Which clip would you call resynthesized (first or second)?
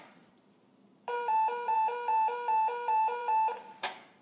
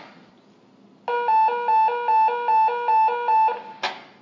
first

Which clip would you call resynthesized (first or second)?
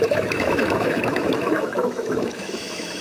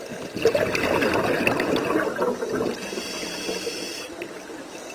first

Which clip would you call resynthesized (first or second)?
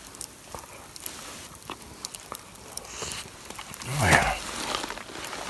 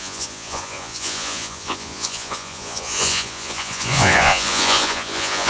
second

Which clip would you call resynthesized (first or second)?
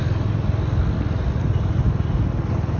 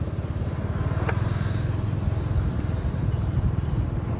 second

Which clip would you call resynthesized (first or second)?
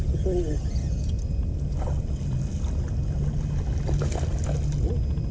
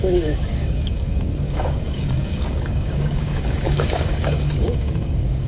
second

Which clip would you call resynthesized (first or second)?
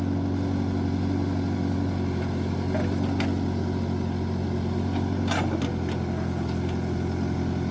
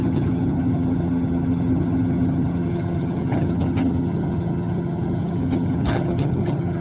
second